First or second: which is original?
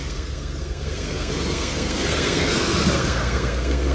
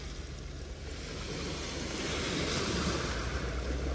second